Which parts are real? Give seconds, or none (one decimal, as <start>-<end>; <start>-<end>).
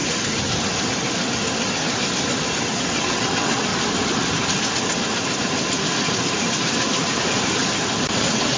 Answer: 0.0-2.6; 3.7-8.2